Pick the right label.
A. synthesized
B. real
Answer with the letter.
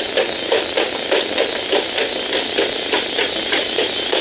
B